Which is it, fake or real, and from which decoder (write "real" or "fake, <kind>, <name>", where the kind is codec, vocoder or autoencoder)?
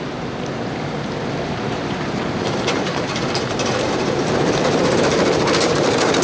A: fake, vocoder, BigVGAN v2